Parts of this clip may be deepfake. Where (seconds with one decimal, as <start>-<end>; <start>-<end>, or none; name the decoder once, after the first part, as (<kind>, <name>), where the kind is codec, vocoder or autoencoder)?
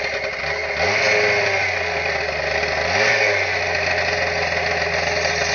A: none